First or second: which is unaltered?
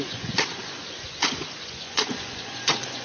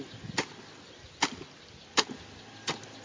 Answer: second